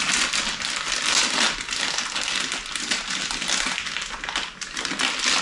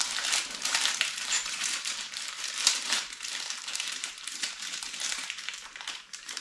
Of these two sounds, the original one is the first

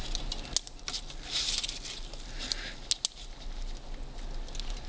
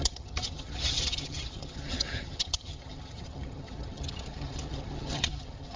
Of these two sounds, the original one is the first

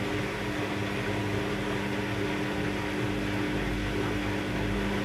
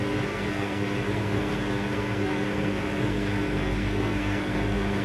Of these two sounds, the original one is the first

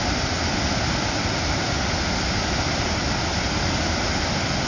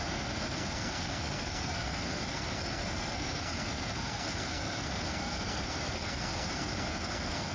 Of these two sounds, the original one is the first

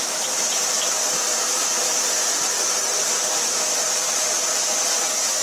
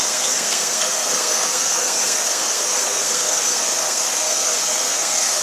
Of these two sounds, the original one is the first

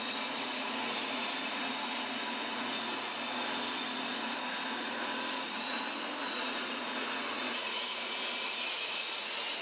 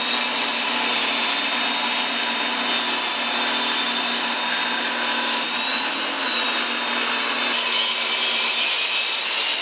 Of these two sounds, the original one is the second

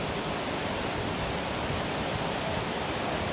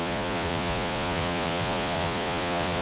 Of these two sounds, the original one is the first